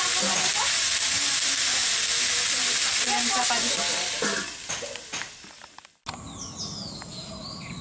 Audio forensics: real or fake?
real